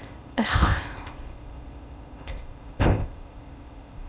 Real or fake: fake